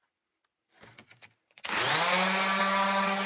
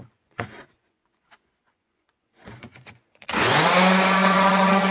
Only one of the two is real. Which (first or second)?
first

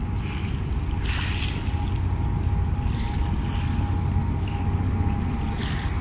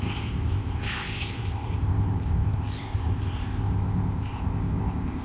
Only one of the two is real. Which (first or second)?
first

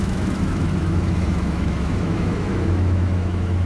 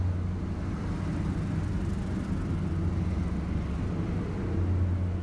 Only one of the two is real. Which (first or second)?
second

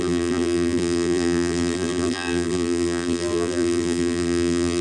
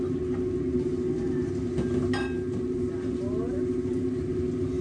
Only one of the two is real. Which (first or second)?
second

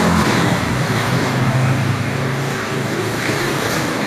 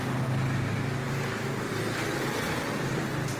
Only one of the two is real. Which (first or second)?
second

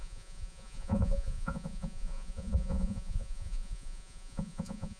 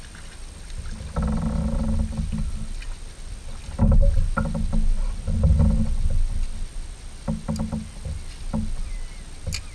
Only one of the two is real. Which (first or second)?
second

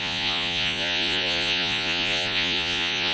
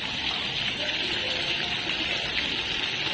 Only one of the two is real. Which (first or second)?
second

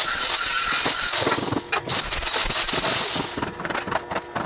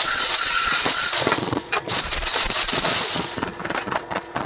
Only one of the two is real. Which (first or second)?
first